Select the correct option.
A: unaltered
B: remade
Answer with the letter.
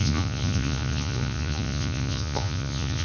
B